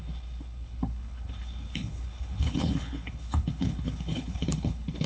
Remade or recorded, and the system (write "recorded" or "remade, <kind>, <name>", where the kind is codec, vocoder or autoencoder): remade, codec, HILCodec